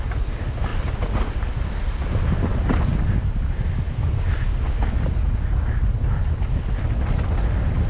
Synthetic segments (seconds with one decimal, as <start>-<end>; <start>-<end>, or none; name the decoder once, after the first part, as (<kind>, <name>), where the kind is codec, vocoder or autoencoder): none